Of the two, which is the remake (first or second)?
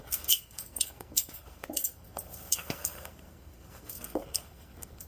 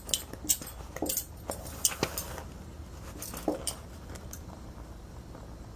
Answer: first